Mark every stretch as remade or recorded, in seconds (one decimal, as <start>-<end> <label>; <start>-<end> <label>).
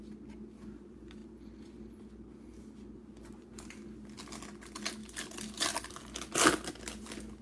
0.0-7.4 recorded